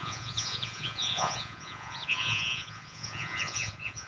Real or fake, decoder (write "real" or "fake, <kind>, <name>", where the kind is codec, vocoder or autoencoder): fake, vocoder, Vocos